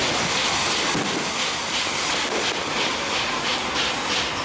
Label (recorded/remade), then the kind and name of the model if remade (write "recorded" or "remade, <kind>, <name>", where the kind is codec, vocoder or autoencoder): recorded